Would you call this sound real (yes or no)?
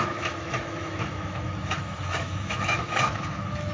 no